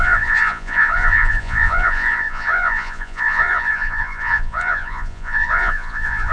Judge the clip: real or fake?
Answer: fake